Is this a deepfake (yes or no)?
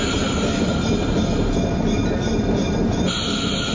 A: no